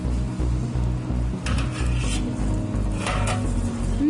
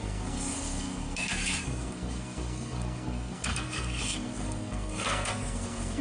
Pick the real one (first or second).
first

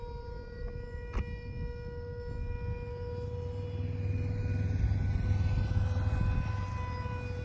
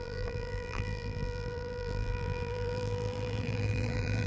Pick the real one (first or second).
first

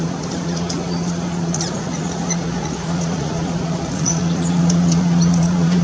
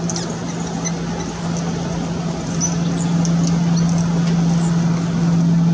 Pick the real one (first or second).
second